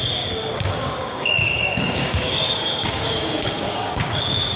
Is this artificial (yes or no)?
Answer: yes